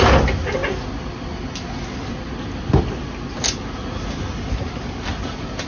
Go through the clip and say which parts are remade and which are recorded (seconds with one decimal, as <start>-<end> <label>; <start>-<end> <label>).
0.0-5.7 recorded